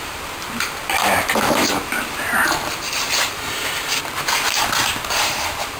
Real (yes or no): no